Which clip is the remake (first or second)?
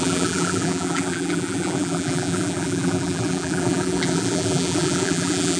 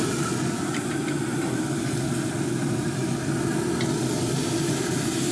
first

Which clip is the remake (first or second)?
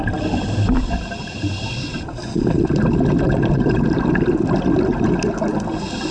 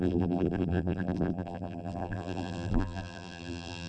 second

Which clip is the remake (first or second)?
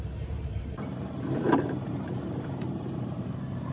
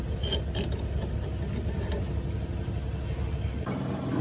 first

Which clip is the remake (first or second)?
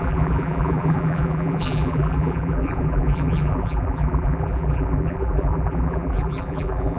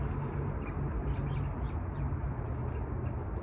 first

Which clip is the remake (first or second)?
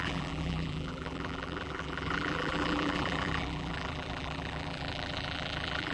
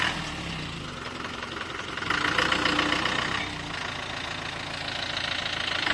first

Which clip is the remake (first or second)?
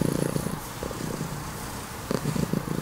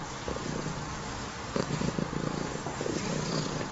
first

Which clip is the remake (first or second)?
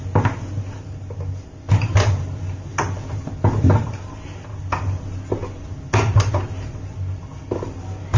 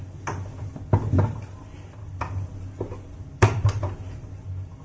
second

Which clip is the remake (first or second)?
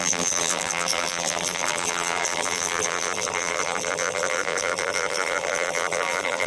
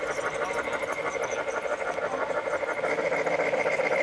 first